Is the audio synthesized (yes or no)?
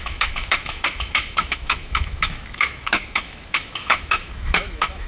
yes